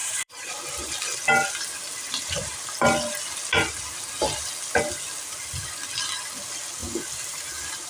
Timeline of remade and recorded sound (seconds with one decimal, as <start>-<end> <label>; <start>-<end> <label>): 0.0-0.5 remade; 0.5-7.9 recorded